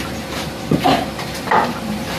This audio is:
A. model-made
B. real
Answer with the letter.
B